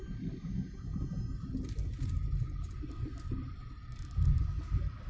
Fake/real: real